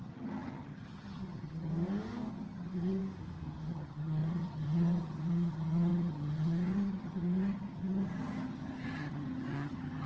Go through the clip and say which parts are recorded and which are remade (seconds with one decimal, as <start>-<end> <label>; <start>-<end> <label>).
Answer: 0.0-1.7 remade; 1.7-2.3 recorded; 2.3-3.0 remade; 3.0-3.7 recorded; 3.7-10.1 remade